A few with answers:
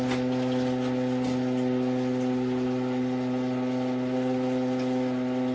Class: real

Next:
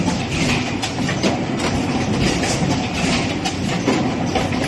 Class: real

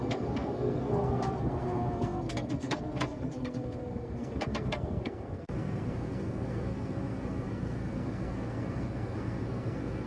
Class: fake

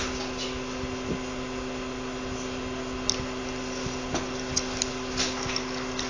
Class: real